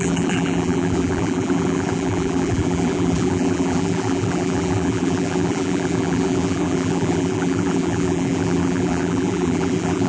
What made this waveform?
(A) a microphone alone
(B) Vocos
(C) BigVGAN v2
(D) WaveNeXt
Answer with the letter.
C